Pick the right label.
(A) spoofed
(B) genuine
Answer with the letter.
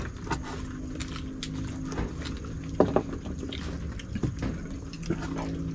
B